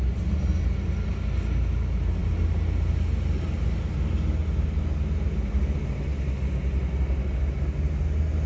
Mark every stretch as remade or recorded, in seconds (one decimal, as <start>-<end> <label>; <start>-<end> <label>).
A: 0.0-8.5 recorded